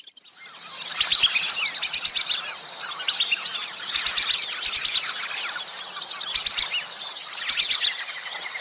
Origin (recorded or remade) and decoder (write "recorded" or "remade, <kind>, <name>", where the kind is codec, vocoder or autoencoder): recorded